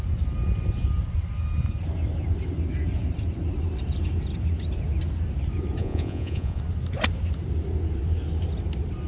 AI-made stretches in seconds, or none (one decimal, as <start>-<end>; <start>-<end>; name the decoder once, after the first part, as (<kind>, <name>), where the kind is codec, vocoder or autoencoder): 5.8-6.6 (vocoder, Vocos)